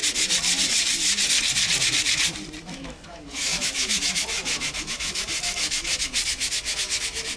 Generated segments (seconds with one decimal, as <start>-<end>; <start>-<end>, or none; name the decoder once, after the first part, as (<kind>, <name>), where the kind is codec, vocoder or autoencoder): 2.6-7.4 (autoencoder, DAC-VAE)